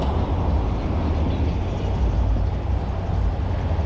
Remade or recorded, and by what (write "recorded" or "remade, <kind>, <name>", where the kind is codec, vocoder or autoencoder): recorded